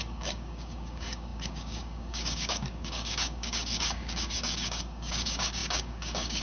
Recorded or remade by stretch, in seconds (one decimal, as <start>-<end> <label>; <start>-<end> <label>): 0.0-6.4 remade